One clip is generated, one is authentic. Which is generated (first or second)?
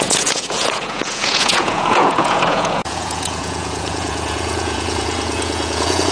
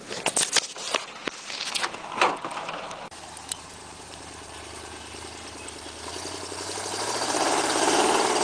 first